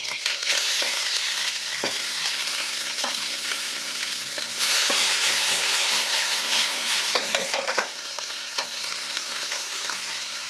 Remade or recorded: remade